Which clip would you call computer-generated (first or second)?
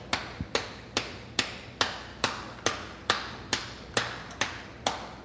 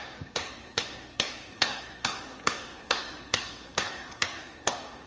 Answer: second